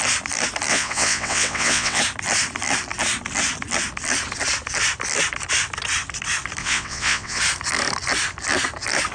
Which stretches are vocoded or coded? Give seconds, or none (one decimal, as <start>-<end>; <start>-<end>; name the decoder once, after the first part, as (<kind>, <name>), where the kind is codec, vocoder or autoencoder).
0.7-2.0 (vocoder, WaveNeXt); 6.6-7.4